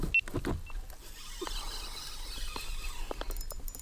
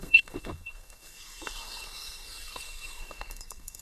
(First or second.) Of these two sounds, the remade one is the second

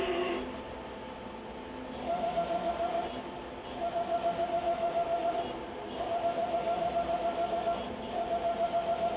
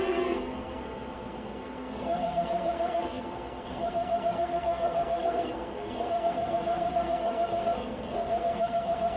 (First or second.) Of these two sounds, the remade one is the second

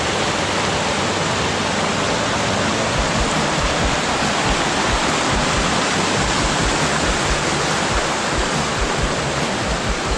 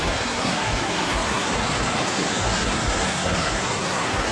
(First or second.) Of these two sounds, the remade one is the second